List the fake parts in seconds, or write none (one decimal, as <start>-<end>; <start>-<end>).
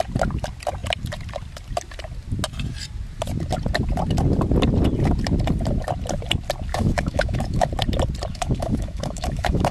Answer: 6.7-7.7; 8.3-9.7